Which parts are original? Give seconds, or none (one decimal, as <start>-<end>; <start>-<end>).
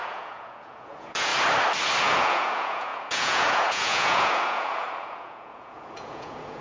1.3-2.0